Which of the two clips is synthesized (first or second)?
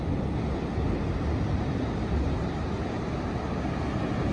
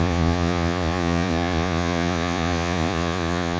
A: second